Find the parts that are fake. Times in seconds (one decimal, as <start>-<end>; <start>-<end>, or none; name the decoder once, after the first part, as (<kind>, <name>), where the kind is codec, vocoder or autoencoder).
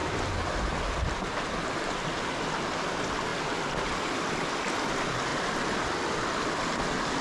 none